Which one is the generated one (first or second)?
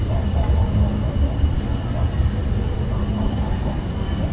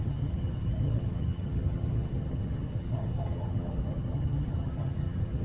second